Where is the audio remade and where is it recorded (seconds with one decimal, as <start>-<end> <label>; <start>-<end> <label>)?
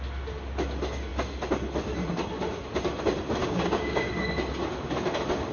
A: 0.0-3.4 recorded; 3.4-4.1 remade; 4.1-5.5 recorded